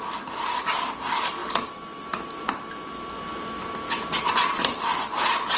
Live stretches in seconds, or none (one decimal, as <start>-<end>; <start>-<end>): 0.0-5.6